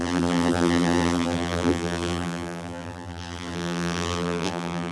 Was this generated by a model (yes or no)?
yes